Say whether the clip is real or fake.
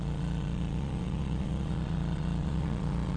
fake